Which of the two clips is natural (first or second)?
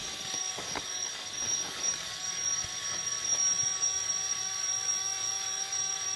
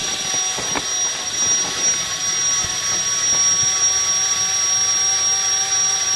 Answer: second